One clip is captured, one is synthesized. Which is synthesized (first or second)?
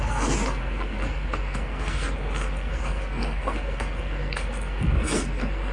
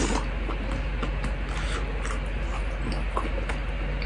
first